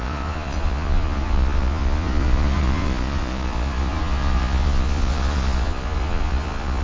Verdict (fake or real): fake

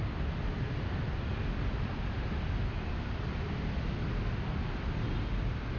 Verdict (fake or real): real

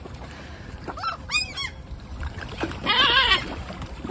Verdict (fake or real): fake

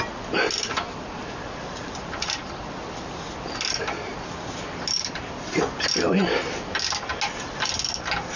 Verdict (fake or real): real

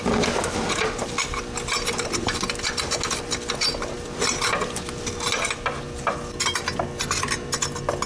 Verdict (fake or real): real